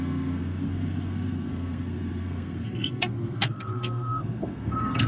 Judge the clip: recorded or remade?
remade